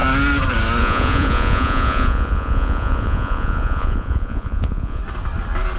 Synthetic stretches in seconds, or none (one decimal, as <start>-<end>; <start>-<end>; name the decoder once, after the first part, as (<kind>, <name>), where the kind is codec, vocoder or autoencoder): 0.8-5.0 (vocoder, Vocos)